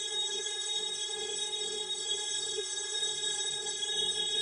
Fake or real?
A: fake